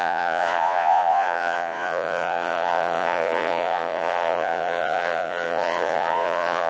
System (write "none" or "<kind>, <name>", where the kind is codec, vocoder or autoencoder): vocoder, Vocos